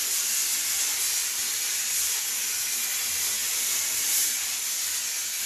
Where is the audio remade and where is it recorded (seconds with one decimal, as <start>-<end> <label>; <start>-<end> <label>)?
0.0-1.2 recorded; 1.2-1.7 remade; 1.7-3.4 recorded; 3.4-4.4 remade; 4.4-5.5 recorded